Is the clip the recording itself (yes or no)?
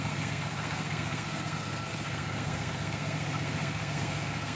no